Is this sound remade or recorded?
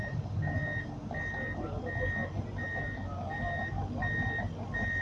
recorded